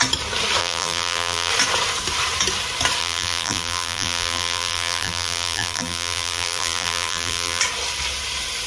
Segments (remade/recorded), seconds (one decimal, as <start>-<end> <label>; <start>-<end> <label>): 0.0-0.6 recorded; 0.6-1.5 remade; 1.5-3.0 recorded; 3.0-7.6 remade; 7.6-8.7 recorded